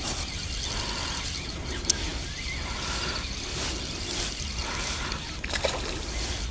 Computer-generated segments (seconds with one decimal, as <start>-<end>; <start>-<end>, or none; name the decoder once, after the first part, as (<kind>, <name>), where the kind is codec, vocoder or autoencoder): none